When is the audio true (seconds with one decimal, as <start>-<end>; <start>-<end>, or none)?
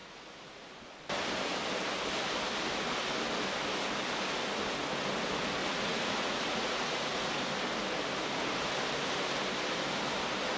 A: 0.7-5.6; 7.3-10.6